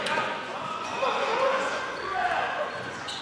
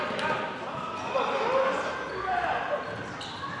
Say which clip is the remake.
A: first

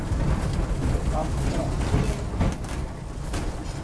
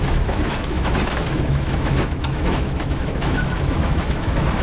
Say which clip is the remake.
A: second